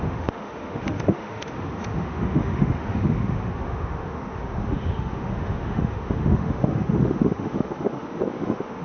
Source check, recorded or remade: remade